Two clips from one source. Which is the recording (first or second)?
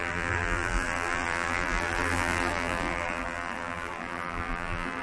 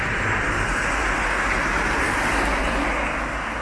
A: second